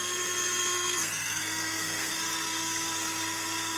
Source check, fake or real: fake